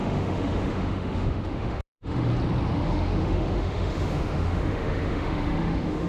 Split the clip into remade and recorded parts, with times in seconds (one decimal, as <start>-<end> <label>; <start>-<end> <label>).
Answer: 0.0-2.3 remade; 2.3-2.7 recorded; 2.7-6.1 remade